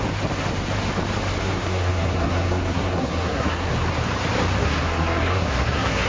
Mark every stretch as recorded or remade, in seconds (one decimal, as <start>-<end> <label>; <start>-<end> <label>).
0.0-1.4 recorded; 1.4-3.7 remade; 3.7-4.6 recorded; 4.6-6.1 remade